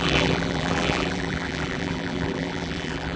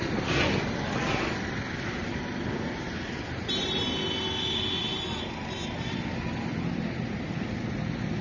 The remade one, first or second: first